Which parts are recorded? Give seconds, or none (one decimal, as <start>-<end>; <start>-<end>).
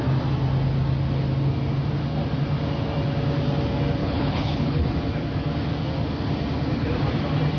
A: 0.0-4.0; 4.8-7.6